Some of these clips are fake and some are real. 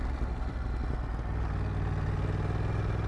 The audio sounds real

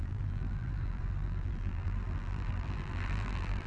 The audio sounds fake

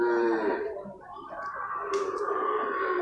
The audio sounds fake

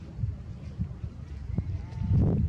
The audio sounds fake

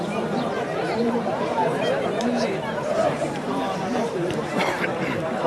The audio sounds fake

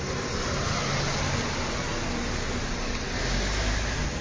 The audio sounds real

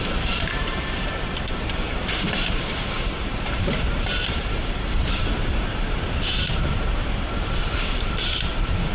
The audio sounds fake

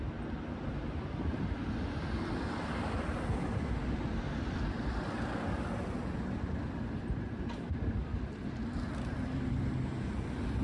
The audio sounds fake